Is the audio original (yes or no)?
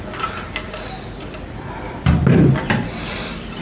yes